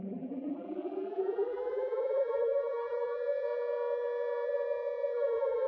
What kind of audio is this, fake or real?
fake